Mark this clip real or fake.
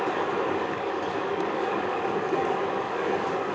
fake